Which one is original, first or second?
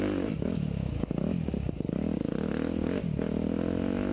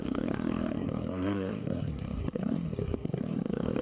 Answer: first